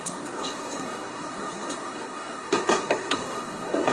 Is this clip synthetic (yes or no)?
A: yes